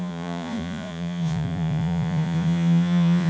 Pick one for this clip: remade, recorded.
remade